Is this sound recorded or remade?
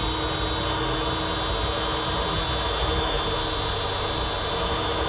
recorded